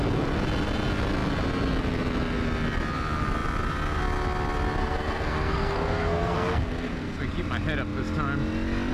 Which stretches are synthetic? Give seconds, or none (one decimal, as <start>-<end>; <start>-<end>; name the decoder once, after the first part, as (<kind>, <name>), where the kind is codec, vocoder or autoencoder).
4.8-7.2 (codec, SNAC)